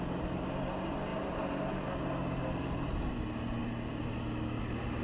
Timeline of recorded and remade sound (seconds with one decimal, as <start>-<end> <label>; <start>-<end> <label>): 0.0-5.0 recorded